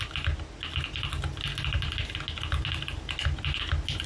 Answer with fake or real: real